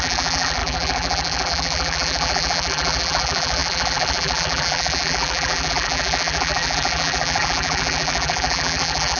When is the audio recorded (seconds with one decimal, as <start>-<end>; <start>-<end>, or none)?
none